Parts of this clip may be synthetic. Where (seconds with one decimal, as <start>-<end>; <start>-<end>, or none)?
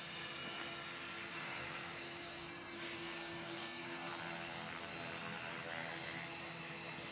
1.3-4.1